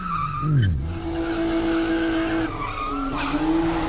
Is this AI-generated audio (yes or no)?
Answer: no